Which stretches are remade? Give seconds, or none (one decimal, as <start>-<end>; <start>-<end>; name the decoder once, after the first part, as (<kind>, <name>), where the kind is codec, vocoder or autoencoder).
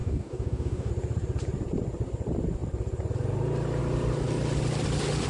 0.0-0.9 (codec, DAC)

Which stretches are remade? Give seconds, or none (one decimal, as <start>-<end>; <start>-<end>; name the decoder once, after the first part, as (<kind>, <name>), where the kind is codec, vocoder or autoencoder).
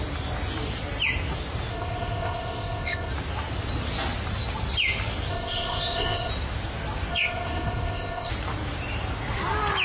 1.7-3.1 (codec, ZipCodec); 5.3-6.3; 7.1-8.3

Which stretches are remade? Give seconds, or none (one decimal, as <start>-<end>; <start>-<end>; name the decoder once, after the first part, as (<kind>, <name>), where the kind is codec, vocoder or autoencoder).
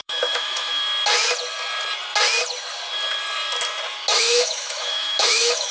0.0-0.8 (autoencoder, DAC-VAE); 4.2-5.7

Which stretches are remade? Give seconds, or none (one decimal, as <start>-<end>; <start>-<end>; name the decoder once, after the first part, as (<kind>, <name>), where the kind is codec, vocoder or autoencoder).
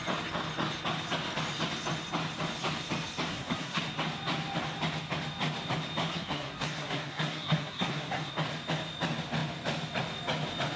3.3-3.8 (codec, SNAC); 6.1-8.3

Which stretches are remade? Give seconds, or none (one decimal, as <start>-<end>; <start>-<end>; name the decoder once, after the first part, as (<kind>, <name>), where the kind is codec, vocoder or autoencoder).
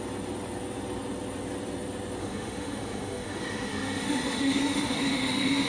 2.2-5.7 (autoencoder, DAC-VAE)